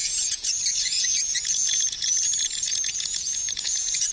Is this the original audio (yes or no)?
no